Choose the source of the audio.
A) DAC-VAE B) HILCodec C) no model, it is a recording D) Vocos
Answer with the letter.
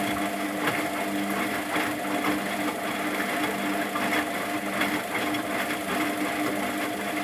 C